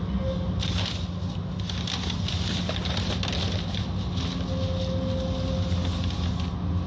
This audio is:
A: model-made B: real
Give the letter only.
B